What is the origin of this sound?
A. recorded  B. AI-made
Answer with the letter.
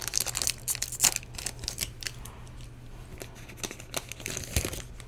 A